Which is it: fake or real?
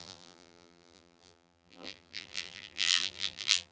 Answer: fake